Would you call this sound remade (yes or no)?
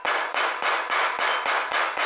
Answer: yes